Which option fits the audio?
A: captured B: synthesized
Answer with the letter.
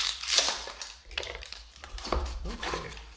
B